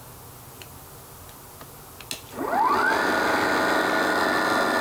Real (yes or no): yes